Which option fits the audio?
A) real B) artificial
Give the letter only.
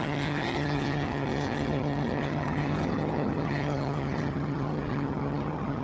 B